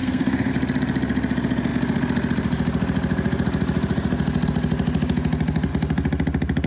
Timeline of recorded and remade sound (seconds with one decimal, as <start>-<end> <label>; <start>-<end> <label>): 0.0-0.5 remade; 0.5-6.7 recorded